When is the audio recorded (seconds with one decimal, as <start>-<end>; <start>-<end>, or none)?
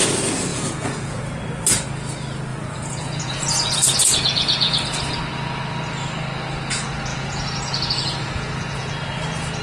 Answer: 0.0-0.5; 1.2-2.5; 5.2-7.1; 9.0-9.6